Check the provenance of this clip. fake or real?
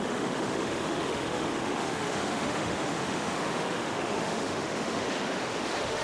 fake